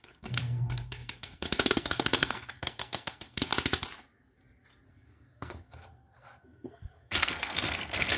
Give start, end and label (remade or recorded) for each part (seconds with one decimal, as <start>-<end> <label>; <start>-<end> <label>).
0.0-3.5 remade; 3.5-4.9 recorded; 4.9-8.2 remade